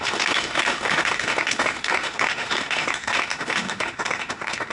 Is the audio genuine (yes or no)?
no